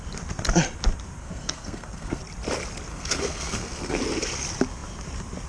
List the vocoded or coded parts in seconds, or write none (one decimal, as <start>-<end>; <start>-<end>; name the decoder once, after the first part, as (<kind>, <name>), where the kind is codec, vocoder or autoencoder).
1.2-2.2 (codec, SNAC); 2.9-4.0